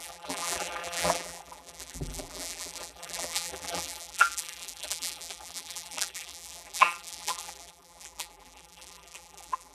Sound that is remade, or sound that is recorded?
remade